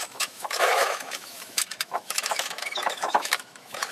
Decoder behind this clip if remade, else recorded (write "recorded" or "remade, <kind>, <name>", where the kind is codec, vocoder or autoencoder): remade, autoencoder, DAC-VAE